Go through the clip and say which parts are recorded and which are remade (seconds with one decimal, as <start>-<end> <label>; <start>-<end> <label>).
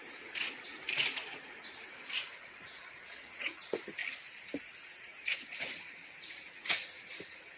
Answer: 0.0-4.0 remade; 4.0-5.0 recorded; 5.0-7.6 remade